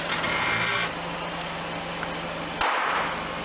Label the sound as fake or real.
real